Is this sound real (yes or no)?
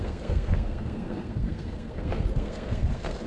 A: no